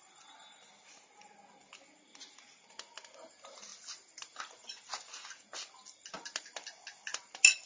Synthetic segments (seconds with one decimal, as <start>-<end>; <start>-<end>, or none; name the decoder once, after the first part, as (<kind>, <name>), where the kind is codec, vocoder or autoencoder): none